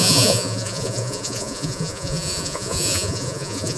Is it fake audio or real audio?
fake